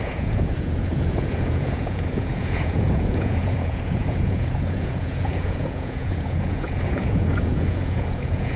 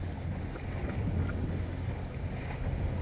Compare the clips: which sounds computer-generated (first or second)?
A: first